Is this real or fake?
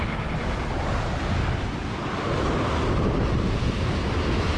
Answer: real